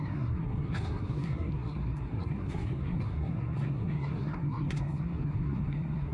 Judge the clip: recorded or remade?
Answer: remade